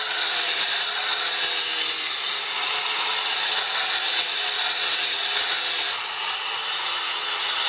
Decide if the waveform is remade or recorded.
recorded